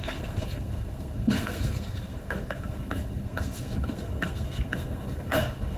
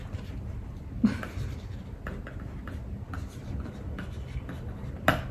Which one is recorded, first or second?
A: second